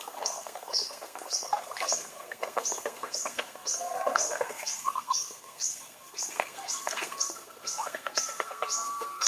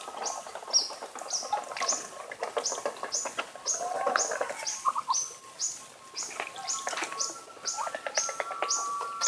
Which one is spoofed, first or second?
first